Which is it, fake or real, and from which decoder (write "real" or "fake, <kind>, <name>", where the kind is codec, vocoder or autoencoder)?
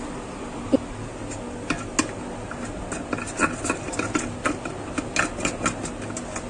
real